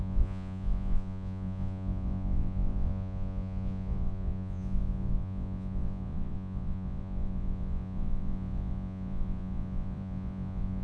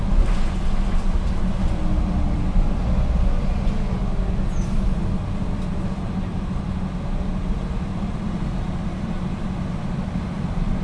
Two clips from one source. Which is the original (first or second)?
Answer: second